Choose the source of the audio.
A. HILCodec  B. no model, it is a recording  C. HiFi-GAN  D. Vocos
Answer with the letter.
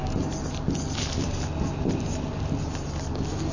B